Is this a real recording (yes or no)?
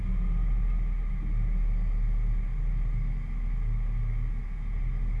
yes